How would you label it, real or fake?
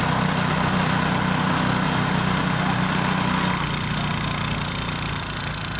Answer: real